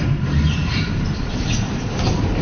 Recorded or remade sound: remade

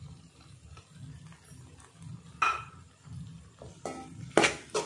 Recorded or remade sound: recorded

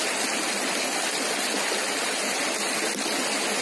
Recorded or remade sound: recorded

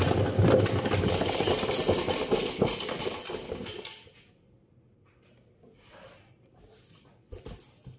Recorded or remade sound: recorded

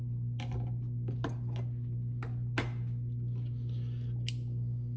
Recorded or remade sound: recorded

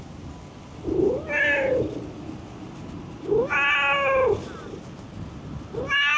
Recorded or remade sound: recorded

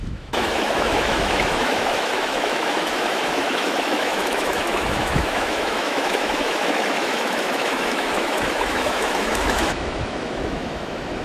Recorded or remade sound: remade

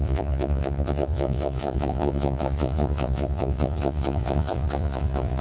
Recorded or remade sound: remade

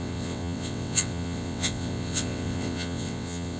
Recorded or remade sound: remade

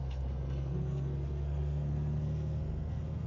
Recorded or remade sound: remade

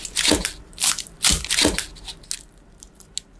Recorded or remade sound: recorded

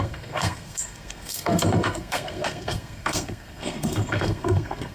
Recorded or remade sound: remade